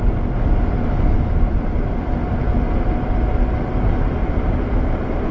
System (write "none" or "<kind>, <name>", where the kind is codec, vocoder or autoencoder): none